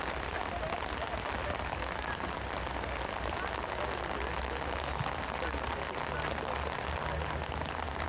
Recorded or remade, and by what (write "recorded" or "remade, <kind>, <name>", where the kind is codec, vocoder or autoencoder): recorded